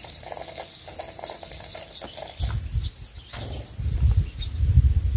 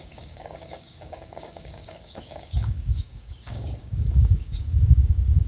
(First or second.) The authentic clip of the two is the first